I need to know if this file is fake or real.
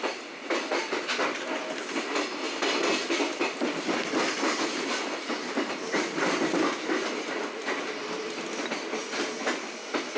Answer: real